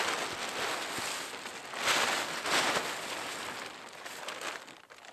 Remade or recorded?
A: recorded